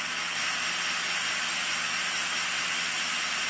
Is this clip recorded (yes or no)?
yes